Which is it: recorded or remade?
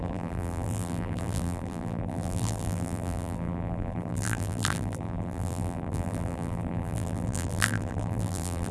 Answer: remade